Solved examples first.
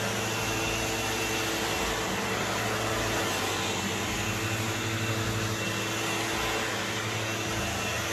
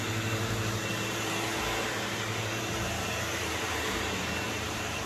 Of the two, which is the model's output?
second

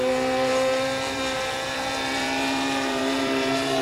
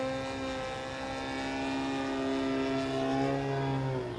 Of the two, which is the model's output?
first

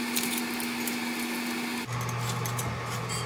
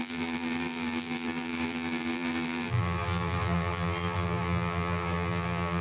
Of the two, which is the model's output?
second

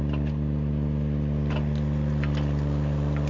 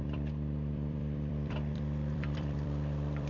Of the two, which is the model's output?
second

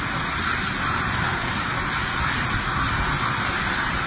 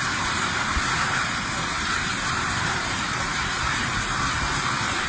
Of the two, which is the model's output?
second